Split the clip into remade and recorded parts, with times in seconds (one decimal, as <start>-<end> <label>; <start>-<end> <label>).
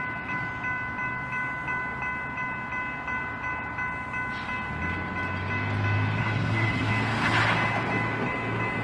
0.0-6.2 recorded; 6.2-6.9 remade; 6.9-8.8 recorded